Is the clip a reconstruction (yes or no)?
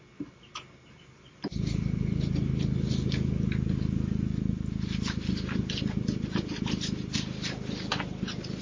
no